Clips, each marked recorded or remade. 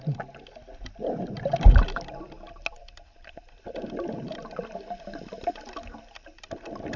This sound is recorded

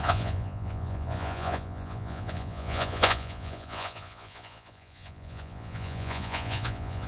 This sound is remade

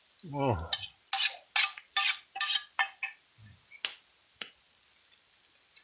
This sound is recorded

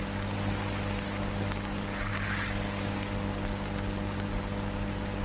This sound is recorded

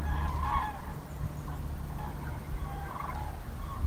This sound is recorded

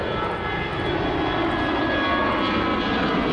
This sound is recorded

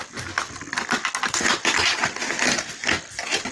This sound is recorded